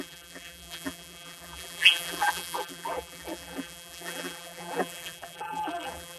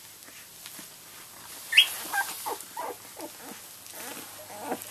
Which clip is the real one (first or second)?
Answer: second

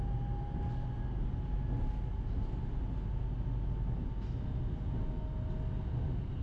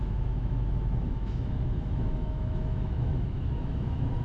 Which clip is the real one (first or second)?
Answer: first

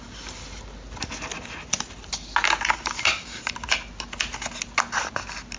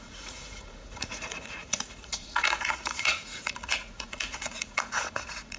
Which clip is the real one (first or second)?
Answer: first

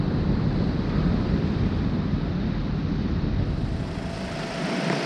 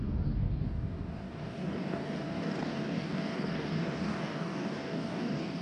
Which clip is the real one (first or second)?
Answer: first